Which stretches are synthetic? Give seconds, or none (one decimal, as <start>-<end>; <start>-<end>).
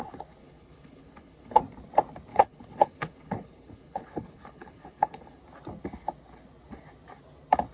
0.4-1.6; 2.3-5.4